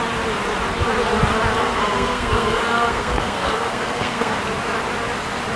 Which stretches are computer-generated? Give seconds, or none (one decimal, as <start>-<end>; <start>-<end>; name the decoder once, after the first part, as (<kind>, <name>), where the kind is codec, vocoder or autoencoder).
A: 1.6-4.4 (codec, SNAC)